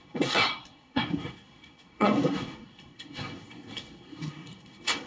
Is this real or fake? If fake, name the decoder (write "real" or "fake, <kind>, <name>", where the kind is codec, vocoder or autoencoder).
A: fake, codec, SNAC